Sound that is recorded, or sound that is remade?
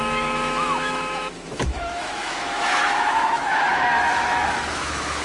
remade